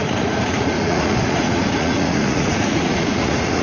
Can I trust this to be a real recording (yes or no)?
no